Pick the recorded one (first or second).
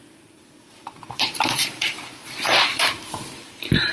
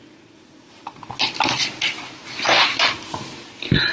second